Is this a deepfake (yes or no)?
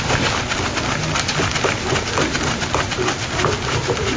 no